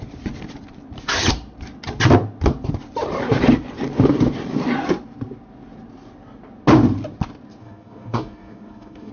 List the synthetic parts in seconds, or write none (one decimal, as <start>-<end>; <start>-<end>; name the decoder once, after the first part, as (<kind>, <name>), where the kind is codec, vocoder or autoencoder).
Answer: 7.6-9.1 (codec, SNAC)